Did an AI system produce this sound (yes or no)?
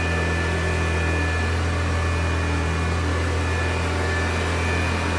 no